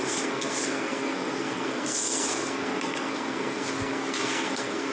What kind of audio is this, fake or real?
fake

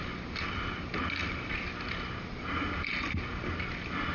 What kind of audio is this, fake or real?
real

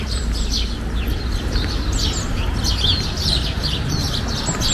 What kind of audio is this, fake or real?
real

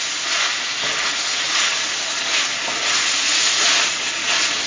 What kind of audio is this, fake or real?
fake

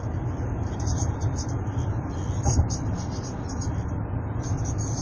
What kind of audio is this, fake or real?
real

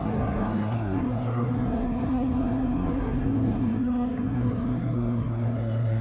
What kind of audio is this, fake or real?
fake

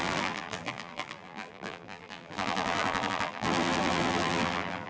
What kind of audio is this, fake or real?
fake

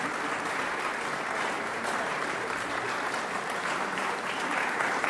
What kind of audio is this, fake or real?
fake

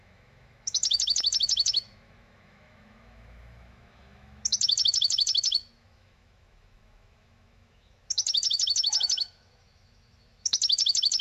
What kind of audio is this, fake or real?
fake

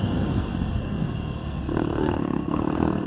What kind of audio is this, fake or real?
fake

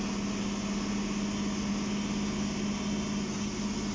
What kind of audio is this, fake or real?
real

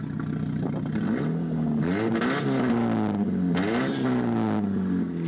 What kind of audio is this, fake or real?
real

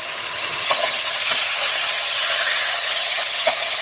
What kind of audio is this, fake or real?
fake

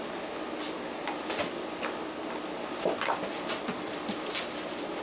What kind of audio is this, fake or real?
real